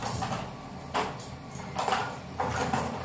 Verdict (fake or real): real